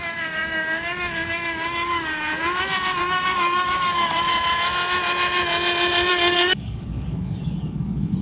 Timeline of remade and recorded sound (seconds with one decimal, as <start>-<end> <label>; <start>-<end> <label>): 0.0-2.3 remade; 2.3-3.0 recorded; 3.0-4.3 remade; 4.3-6.1 recorded; 6.1-8.2 remade